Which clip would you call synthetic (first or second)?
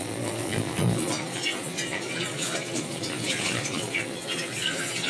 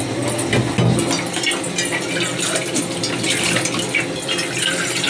first